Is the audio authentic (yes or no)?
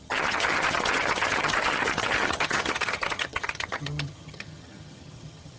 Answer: no